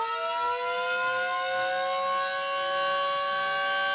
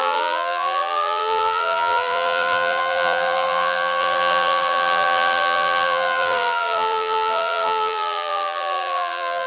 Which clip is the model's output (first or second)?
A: second